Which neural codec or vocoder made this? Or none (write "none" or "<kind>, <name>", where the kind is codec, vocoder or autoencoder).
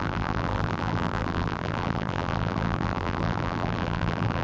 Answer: vocoder, BigVGAN v2